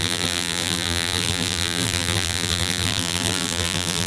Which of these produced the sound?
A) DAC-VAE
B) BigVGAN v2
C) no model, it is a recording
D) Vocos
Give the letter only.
B